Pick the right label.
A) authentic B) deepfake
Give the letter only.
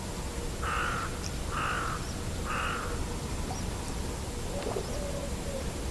A